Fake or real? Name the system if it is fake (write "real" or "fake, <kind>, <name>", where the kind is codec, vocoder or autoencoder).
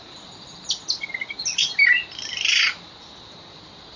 real